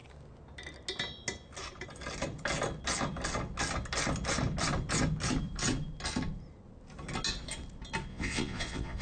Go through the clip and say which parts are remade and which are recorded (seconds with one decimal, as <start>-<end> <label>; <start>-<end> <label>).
0.0-8.1 recorded; 8.1-9.0 remade